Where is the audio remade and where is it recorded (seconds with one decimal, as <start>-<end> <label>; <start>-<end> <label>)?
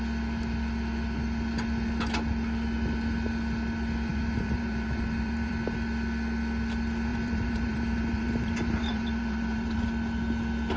0.0-4.1 recorded; 4.1-5.5 remade; 5.5-7.1 recorded; 7.1-9.8 remade; 9.8-10.8 recorded